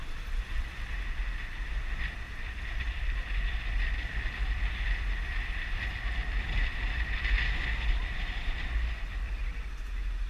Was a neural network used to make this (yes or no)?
yes